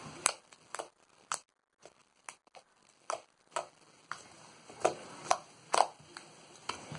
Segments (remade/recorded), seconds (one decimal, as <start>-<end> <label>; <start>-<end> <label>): 0.0-7.0 recorded